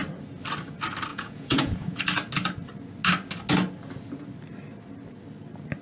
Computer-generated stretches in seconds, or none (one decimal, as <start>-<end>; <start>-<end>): 1.1-2.0